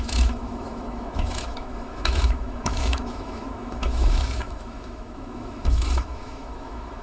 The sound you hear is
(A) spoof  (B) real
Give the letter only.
A